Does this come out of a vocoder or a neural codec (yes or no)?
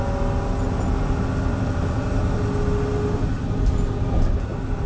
no